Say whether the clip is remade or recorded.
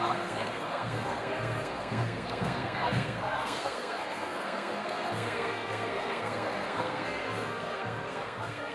remade